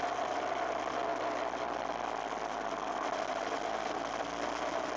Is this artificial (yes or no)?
no